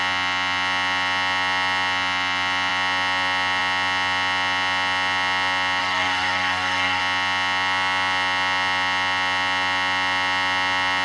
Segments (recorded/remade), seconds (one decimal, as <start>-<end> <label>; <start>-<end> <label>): 0.0-5.8 recorded; 5.8-7.0 remade; 7.0-11.0 recorded